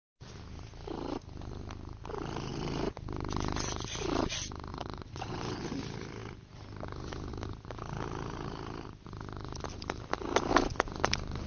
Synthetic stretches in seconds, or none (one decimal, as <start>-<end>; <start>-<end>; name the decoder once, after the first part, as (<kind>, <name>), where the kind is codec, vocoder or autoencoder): 4.7-5.6 (vocoder, WaveNeXt)